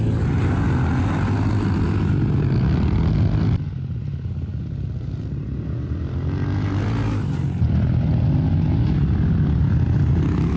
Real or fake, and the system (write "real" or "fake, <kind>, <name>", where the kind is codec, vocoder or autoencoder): real